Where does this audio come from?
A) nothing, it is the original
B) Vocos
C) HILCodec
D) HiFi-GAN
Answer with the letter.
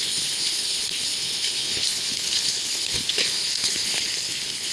C